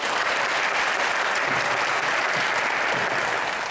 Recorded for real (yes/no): yes